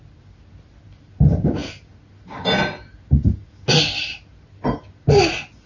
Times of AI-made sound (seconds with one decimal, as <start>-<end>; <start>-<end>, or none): none